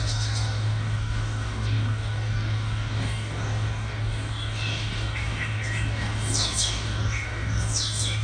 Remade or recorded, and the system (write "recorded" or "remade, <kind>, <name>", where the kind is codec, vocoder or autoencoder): remade, codec, DAC